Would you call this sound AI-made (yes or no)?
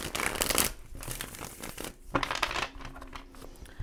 yes